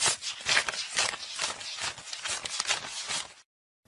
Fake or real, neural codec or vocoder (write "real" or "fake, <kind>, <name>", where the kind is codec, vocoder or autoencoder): real